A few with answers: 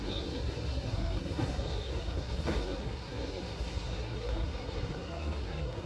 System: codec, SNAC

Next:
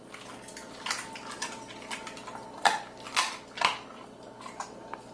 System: none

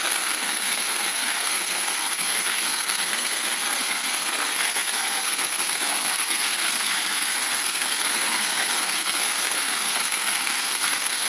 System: codec, SNAC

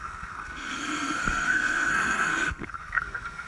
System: codec, SNAC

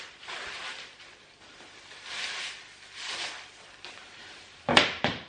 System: none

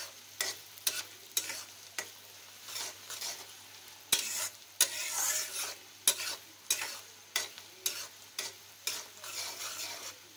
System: none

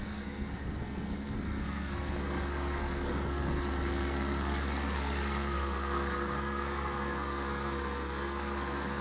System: codec, SNAC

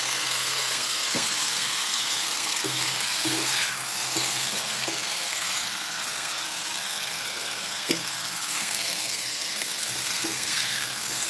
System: codec, SNAC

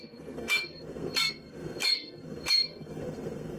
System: codec, SNAC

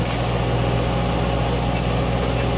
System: none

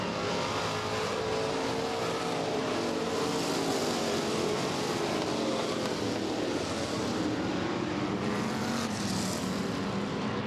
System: none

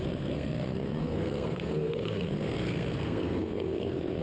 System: codec, SNAC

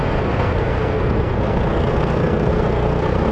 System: codec, SNAC